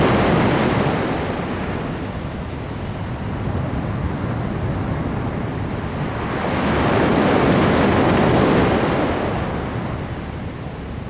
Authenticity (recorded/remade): recorded